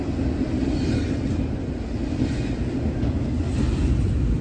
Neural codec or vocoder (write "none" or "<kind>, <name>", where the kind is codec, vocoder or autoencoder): none